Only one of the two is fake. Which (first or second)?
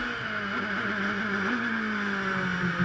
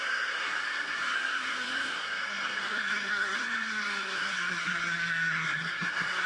second